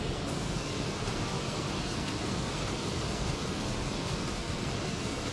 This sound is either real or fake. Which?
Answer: fake